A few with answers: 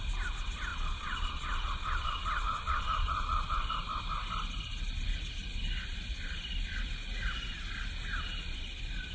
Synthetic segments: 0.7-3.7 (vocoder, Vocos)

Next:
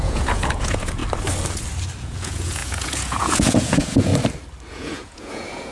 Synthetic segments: 0.0-1.0 (vocoder, Vocos); 2.0-4.1; 4.7-5.7

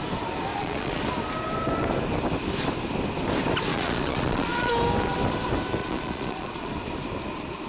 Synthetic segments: 0.5-1.0 (vocoder, Vocos); 3.7-4.7; 5.8-6.7

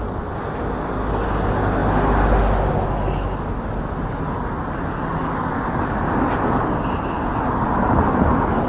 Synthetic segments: none

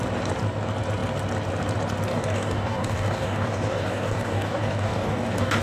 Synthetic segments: 2.1-5.6 (codec, DAC)